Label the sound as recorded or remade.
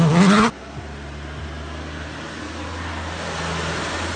recorded